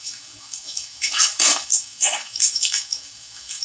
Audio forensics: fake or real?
fake